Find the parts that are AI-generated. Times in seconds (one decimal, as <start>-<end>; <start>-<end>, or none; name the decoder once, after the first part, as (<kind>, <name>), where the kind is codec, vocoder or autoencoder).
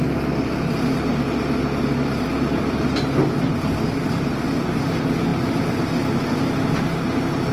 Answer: none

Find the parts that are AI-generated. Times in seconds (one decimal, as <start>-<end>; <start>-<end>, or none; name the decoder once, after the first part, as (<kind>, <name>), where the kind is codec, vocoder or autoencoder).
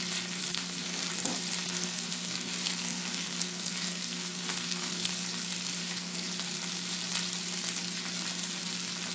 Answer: 0.4-1.1 (codec, SNAC); 1.6-5.1; 5.8-6.3